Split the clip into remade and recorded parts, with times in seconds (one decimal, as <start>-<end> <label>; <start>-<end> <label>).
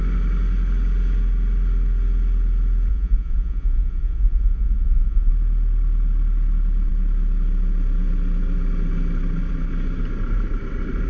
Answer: 0.0-2.9 recorded; 2.9-5.3 remade; 5.3-11.1 recorded